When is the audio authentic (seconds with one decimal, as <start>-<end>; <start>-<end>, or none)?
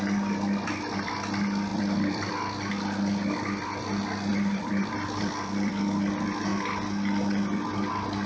0.0-1.7; 2.3-4.3; 5.7-8.3